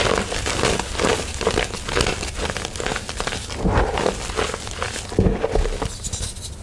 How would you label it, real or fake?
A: real